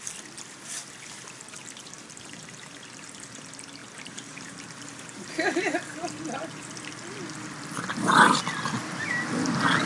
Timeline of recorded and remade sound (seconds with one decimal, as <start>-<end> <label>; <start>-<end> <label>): 0.0-3.8 recorded; 3.8-5.3 remade; 5.3-9.9 recorded